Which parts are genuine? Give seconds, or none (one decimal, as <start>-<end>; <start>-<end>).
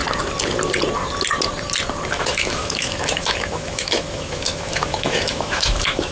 0.0-2.1